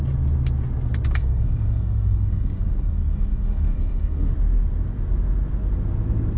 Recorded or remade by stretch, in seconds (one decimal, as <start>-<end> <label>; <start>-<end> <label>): 0.0-1.2 recorded; 1.2-4.3 remade; 4.3-6.4 recorded